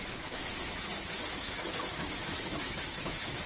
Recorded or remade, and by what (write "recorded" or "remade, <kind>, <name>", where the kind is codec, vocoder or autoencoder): remade, autoencoder, DAC-VAE